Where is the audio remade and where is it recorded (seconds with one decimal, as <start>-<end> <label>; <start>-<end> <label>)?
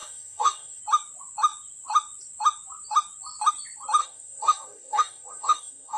0.0-0.8 remade; 0.8-4.0 recorded; 4.0-6.0 remade